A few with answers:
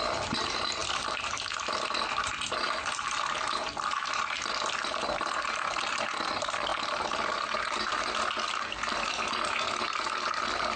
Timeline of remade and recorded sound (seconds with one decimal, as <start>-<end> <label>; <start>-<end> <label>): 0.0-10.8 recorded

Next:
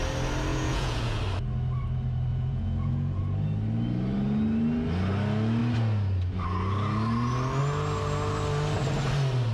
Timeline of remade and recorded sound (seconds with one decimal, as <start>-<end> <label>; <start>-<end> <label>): 0.0-0.5 recorded; 0.5-1.2 remade; 1.2-2.3 recorded; 2.3-3.2 remade; 3.2-9.5 recorded

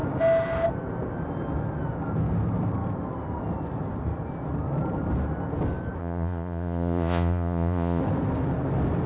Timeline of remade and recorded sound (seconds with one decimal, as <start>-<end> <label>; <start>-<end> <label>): 0.0-6.0 recorded; 6.0-8.0 remade; 8.0-9.1 recorded